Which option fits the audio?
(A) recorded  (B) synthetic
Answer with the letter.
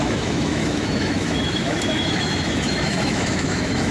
B